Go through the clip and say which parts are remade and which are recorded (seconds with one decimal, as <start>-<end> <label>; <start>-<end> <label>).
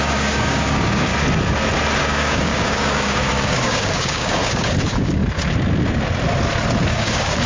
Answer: 0.0-1.1 remade; 1.1-2.0 recorded; 2.0-5.2 remade; 5.2-6.9 recorded; 6.9-7.5 remade